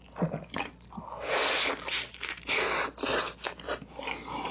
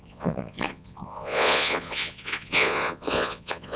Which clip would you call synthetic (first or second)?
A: second